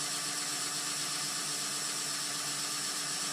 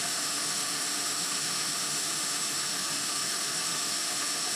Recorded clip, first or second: first